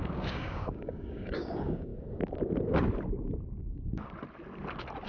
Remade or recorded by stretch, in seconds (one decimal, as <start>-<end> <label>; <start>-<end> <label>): 0.0-1.9 remade; 1.9-5.1 recorded